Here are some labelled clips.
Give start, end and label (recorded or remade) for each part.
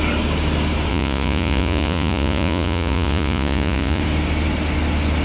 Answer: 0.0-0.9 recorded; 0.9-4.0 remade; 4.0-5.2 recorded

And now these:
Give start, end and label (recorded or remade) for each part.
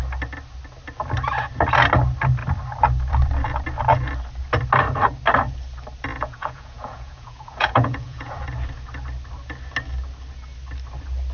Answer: 0.0-6.1 recorded; 6.1-8.4 remade; 8.4-11.3 recorded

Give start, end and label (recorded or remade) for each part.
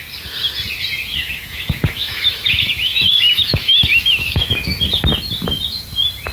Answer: 0.0-1.1 recorded; 1.1-4.7 remade; 4.7-6.3 recorded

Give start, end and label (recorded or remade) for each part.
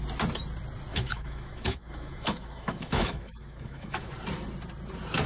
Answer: 0.0-0.9 recorded; 0.9-4.1 remade; 4.1-5.3 recorded